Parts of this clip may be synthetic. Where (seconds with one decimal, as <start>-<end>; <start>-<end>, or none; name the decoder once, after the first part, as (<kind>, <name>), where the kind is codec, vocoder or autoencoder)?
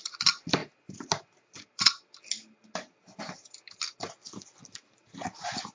none